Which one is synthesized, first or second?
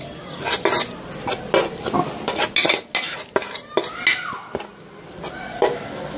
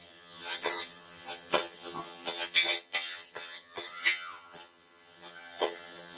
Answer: second